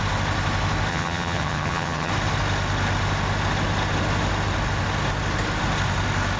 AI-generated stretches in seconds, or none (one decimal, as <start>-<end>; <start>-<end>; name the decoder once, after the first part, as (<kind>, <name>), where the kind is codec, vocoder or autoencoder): 0.9-2.1 (vocoder, HiFi-GAN)